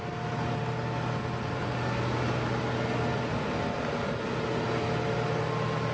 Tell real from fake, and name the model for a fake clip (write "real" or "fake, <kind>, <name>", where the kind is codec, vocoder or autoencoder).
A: real